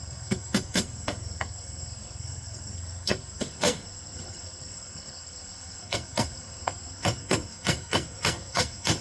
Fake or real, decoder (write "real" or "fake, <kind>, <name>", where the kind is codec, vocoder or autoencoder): fake, codec, SNAC